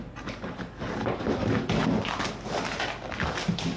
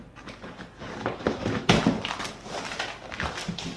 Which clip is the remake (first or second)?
second